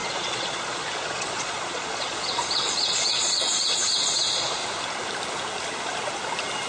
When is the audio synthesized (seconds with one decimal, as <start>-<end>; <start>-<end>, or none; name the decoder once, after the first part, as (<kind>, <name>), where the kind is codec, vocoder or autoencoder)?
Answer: 0.0-4.6 (vocoder, Vocos)